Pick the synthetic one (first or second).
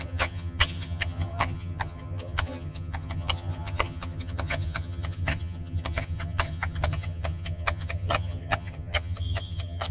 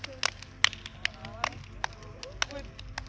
first